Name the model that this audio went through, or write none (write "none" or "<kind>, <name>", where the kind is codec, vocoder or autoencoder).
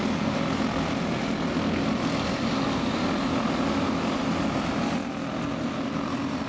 none